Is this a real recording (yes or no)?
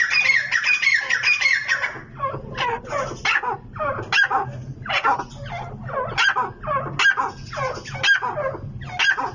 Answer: yes